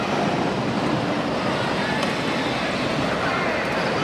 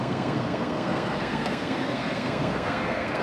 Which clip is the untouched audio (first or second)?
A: first